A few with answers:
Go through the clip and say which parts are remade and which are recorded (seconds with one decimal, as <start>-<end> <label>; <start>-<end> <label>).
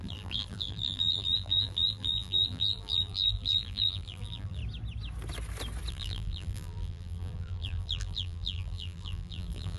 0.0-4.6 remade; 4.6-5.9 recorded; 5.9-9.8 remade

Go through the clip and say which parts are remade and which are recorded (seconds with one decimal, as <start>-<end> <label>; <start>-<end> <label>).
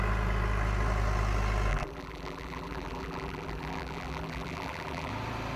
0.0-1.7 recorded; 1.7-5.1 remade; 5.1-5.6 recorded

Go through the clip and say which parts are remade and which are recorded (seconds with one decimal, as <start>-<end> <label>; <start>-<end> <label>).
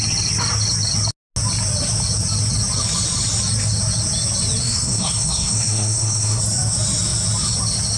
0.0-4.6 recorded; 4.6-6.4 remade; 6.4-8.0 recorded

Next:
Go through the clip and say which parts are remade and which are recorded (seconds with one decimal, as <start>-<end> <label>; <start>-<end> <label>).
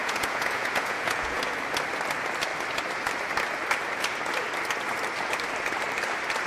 0.0-1.4 remade; 1.4-6.5 recorded